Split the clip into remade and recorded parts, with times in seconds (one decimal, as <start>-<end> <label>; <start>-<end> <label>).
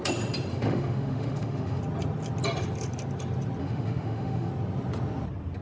0.0-0.5 recorded; 0.5-1.8 remade; 1.8-3.6 recorded; 3.6-4.5 remade; 4.5-5.6 recorded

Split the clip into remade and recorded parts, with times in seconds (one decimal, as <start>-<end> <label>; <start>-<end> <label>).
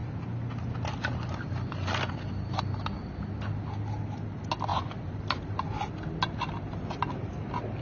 0.0-7.8 recorded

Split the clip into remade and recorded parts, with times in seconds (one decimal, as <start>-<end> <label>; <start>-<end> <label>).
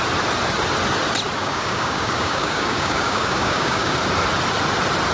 0.0-1.4 recorded; 1.4-4.0 remade; 4.0-5.1 recorded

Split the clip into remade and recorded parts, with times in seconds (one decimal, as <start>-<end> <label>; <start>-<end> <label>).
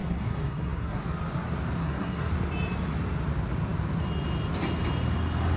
0.0-1.0 remade; 1.0-1.8 recorded; 1.8-2.3 remade; 2.3-5.6 recorded